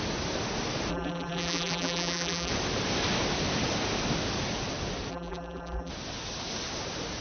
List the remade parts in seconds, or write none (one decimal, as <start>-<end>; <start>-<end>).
0.9-2.5; 5.1-5.9